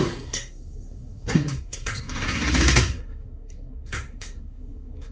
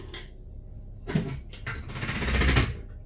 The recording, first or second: second